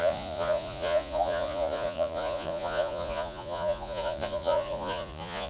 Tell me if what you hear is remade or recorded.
remade